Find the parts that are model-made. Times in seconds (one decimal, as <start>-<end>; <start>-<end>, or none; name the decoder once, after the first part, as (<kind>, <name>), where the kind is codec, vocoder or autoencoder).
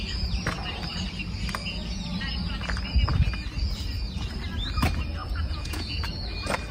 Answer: 5.2-5.9 (vocoder, Vocos)